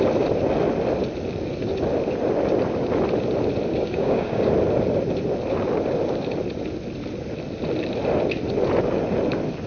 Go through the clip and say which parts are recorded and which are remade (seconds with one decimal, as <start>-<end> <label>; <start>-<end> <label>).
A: 0.0-3.7 recorded; 3.7-4.5 remade; 4.5-9.7 recorded